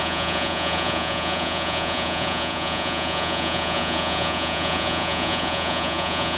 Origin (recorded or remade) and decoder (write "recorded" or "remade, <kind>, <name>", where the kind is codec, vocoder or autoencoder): remade, vocoder, Vocos